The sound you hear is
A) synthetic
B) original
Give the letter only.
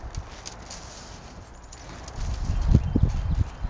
B